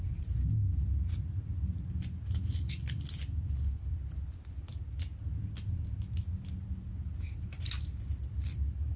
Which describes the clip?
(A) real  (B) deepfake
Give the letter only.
A